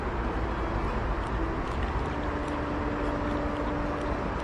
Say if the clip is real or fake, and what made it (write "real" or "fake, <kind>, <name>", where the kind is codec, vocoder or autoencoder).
real